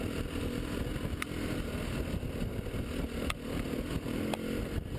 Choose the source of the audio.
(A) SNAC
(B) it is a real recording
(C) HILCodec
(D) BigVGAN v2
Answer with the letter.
B